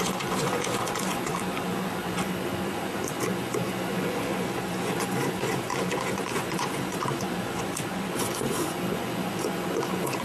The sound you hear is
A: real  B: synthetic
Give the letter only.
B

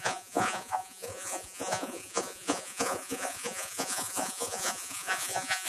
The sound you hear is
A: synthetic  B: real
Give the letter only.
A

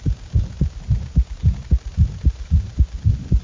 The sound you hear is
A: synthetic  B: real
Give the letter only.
B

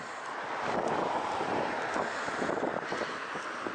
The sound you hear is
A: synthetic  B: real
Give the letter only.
B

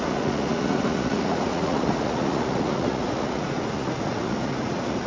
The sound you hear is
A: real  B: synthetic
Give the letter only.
B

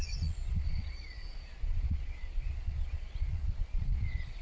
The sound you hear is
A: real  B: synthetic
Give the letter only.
B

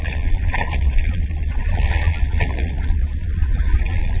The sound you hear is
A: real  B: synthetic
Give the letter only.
B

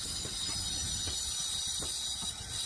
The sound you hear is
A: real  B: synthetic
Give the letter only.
A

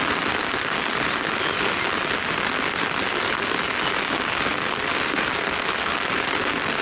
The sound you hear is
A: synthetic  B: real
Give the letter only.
B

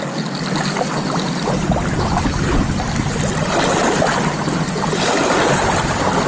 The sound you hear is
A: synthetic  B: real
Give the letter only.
B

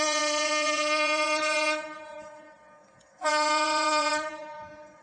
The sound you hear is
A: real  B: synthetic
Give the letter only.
B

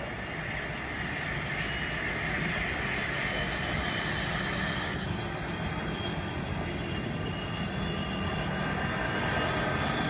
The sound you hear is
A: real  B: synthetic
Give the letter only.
A